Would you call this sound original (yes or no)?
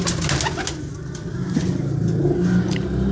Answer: yes